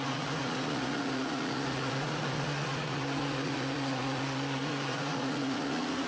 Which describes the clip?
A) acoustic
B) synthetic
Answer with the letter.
B